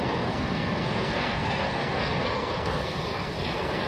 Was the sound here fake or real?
fake